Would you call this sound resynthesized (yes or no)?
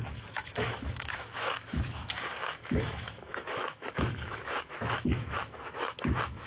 yes